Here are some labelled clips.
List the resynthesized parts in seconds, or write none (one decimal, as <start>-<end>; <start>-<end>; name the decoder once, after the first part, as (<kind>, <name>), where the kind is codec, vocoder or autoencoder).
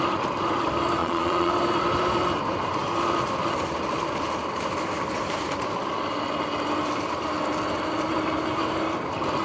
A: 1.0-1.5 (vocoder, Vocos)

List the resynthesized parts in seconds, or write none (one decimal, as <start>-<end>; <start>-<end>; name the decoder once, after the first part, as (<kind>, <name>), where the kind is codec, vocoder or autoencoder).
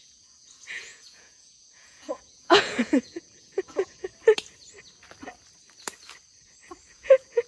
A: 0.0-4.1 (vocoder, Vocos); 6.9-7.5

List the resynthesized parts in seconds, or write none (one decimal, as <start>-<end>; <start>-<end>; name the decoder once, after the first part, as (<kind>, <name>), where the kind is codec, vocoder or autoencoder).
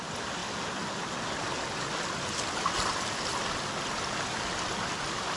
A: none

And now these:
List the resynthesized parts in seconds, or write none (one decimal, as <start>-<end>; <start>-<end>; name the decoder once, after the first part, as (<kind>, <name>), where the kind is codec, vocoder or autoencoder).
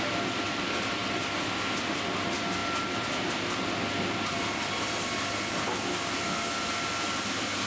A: none